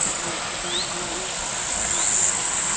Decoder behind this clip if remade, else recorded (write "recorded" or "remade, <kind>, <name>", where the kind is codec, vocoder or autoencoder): recorded